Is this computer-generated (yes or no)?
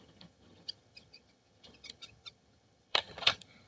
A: yes